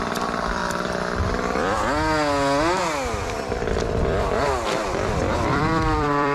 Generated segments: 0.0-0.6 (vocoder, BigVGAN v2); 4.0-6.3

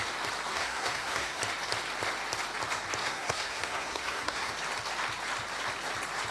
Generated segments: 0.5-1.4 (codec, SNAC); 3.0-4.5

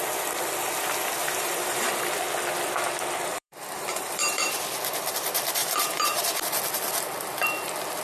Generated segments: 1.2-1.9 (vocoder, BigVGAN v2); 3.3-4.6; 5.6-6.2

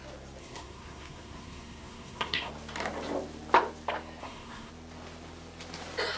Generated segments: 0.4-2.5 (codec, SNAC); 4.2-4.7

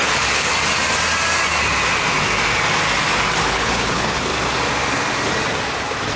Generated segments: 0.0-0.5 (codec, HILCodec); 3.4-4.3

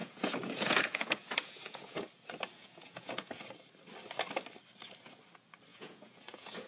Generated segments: 0.0-2.1 (vocoder, Vocos); 2.5-3.4; 5.7-6.7

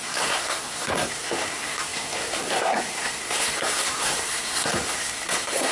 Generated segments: 0.0-5.7 (codec, SNAC)